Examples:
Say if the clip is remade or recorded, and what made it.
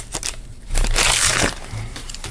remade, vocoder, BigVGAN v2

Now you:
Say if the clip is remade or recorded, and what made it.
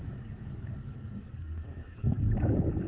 remade, codec, DAC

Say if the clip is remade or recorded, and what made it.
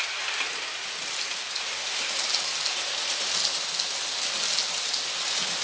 recorded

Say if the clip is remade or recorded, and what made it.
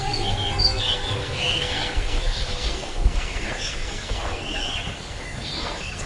remade, codec, SNAC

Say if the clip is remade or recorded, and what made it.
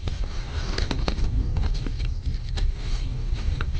remade, codec, DAC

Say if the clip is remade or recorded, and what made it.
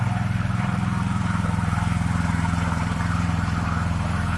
remade, vocoder, BigVGAN v2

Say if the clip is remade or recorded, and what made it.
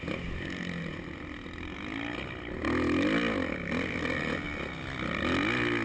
recorded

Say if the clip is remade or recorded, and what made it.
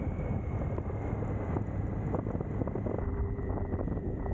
recorded